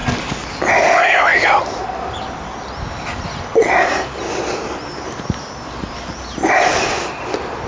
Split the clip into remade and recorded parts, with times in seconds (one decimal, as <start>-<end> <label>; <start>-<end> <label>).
0.0-7.7 recorded